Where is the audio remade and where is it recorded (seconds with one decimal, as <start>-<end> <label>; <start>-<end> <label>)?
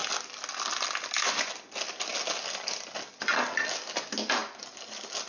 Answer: 0.0-5.3 recorded